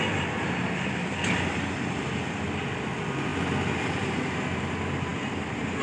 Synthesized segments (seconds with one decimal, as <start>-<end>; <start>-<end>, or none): none